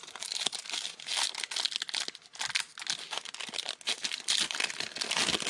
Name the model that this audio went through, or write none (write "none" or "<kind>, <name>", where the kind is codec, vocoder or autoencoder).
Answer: none